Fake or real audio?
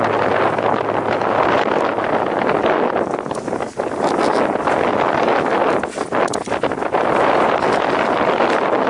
real